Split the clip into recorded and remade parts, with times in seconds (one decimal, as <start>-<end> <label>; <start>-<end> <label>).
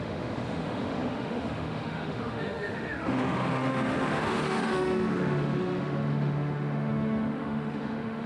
0.0-8.3 remade